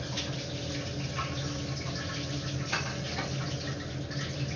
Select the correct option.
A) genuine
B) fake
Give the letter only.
A